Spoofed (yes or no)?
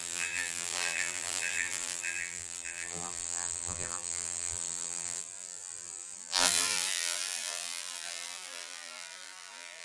yes